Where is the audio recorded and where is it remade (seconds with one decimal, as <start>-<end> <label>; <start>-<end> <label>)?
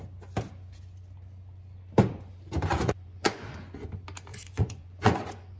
0.0-2.7 recorded; 2.7-3.9 remade; 3.9-4.3 recorded; 4.3-5.6 remade